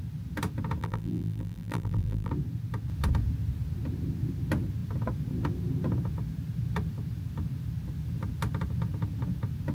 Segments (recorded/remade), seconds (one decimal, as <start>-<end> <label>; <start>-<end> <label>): 0.0-0.8 recorded; 0.8-2.3 remade; 2.3-9.7 recorded